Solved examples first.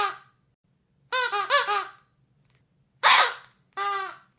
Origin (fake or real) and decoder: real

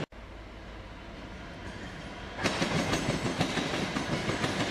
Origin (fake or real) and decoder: real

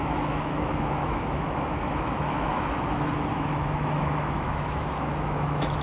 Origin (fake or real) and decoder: fake, autoencoder, DAC-VAE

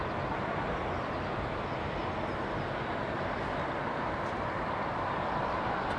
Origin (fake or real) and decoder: real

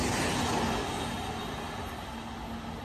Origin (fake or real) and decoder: real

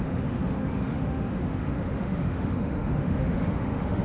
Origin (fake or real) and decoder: fake, autoencoder, DAC-VAE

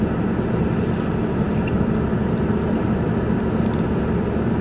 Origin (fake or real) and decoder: real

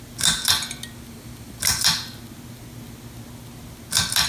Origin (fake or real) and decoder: real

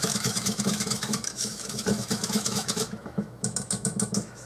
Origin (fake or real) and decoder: fake, autoencoder, DAC-VAE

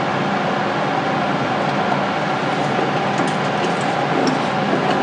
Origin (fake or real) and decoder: real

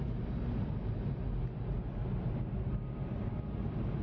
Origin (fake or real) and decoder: real